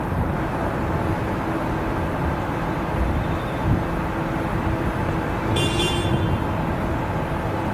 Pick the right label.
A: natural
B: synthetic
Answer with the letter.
A